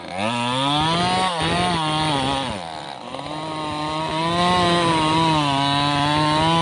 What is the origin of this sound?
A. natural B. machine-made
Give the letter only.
A